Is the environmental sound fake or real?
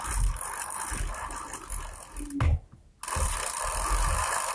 real